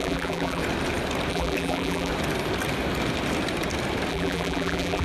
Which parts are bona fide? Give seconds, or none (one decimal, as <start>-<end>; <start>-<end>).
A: 0.6-1.3; 2.1-4.1